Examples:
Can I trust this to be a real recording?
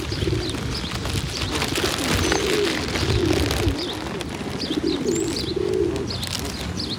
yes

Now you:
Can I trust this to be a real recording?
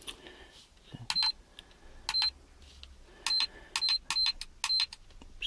yes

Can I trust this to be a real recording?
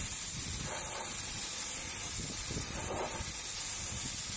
yes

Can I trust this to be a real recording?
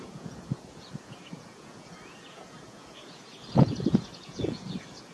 no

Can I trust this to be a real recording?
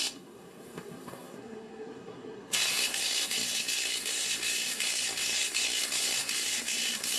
no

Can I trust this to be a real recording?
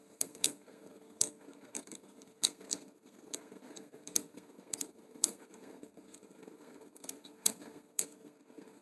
no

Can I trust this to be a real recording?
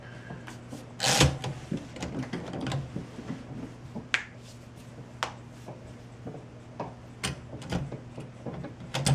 yes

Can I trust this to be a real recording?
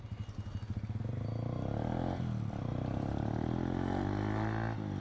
yes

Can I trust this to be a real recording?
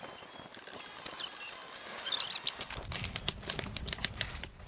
yes